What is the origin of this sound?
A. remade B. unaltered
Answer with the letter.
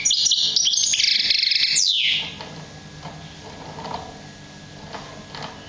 B